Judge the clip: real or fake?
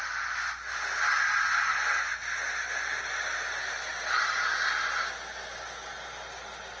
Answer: real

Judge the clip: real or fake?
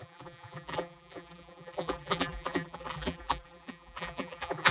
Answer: fake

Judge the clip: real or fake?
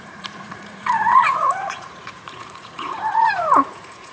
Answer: fake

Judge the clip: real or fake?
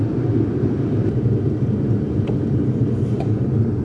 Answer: fake